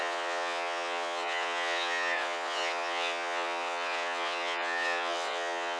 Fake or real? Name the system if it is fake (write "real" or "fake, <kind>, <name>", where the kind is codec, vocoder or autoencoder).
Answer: fake, vocoder, WaveNeXt